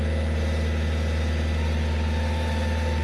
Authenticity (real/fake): real